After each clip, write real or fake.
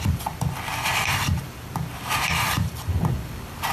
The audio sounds fake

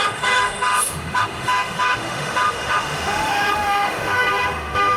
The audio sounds fake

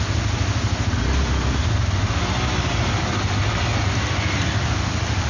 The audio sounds real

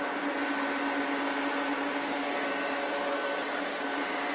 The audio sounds real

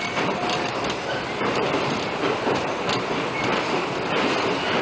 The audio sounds fake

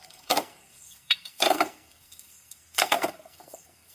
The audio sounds fake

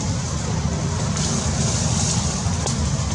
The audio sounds real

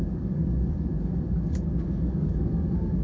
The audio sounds fake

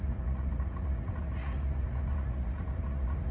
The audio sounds fake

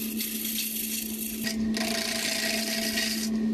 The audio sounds real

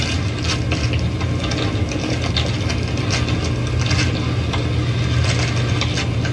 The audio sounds real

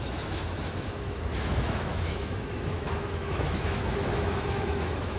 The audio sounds fake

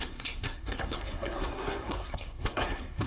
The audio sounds fake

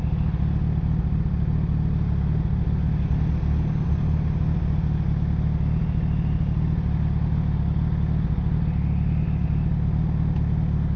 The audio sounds real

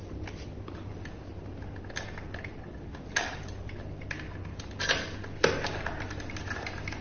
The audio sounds real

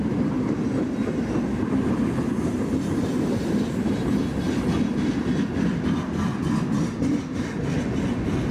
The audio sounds real